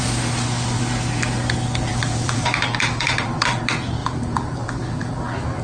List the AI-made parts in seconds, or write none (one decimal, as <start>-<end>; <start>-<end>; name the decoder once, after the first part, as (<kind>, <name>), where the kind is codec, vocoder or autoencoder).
1.9-3.6 (vocoder, BigVGAN v2); 4.0-5.6